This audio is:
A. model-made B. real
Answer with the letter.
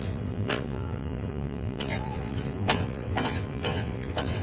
A